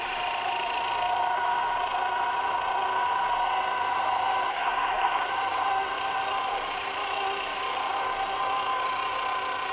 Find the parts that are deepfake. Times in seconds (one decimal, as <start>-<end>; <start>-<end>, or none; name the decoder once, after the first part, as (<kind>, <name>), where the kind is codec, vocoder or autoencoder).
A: 4.5-5.3 (codec, SNAC)